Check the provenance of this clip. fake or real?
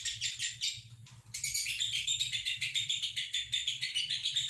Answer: real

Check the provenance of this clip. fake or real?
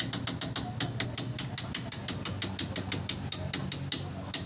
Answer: real